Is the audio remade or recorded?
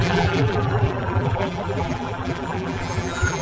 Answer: remade